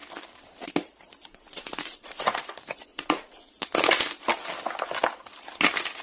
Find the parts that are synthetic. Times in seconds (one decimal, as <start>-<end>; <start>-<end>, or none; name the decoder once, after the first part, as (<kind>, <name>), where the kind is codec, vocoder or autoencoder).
1.3-2.4 (vocoder, Vocos); 2.9-3.5